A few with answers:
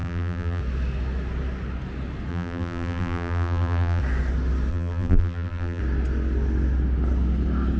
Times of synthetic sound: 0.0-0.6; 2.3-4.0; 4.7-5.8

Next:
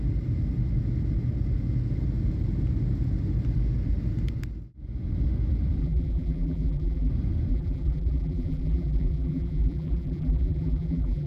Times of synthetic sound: 5.8-7.1; 7.5-11.3

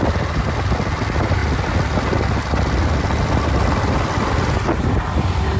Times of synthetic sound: none

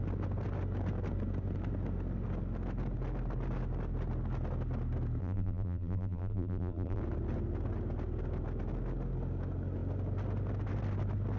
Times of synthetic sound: 5.2-7.0

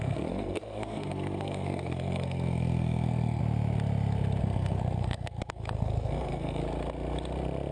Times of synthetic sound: 0.0-3.4; 4.4-6.6

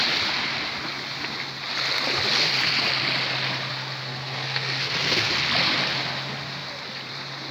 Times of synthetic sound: 3.7-5.3

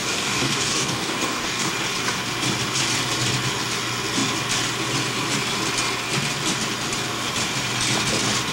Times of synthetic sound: 0.0-1.7